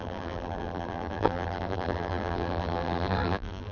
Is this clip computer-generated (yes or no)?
yes